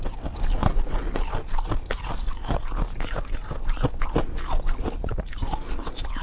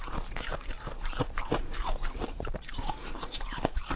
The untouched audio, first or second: first